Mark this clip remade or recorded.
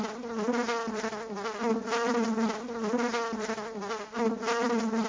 recorded